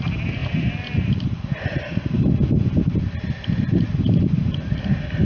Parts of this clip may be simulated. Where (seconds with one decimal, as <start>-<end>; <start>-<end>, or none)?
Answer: none